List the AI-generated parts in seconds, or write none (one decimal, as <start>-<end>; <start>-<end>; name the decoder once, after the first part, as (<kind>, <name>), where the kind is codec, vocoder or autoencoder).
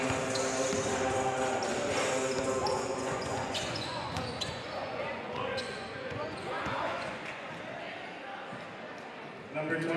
2.6-7.5 (vocoder, Vocos)